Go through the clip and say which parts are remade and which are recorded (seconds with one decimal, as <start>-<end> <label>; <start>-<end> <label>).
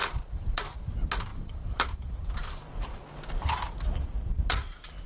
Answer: 0.0-0.8 remade; 0.8-1.3 recorded; 1.3-3.1 remade; 3.1-5.1 recorded